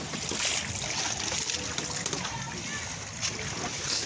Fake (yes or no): no